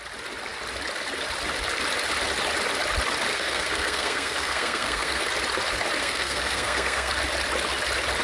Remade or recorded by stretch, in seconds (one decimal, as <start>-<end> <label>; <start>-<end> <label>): 0.0-3.3 recorded; 3.3-5.2 remade; 5.2-6.0 recorded; 6.0-7.1 remade; 7.1-8.2 recorded